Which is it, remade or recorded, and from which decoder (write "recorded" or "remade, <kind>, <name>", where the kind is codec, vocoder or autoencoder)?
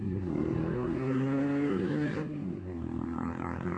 remade, codec, SNAC